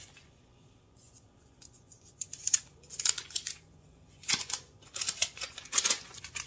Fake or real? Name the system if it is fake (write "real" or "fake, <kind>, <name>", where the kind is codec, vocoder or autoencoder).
fake, vocoder, Vocos